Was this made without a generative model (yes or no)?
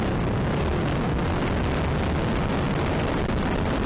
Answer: yes